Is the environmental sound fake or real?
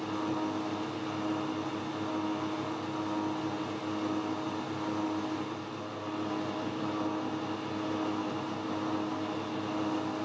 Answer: real